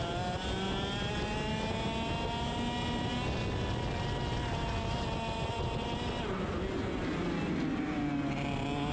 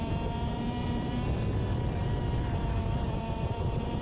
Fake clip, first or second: second